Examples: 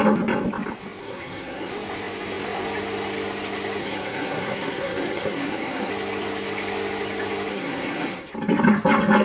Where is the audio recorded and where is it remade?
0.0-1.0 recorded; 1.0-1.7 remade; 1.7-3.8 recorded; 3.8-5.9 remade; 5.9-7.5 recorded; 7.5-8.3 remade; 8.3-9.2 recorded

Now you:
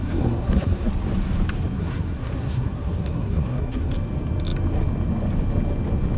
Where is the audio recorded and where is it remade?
0.0-0.9 remade; 0.9-1.8 recorded; 1.8-3.9 remade; 3.9-6.2 recorded

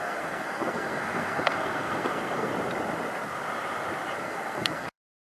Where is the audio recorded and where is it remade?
0.0-2.5 remade; 2.5-4.2 recorded; 4.2-5.3 remade

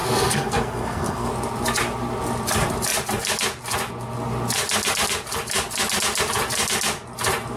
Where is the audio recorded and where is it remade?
0.0-1.3 remade; 1.3-7.6 recorded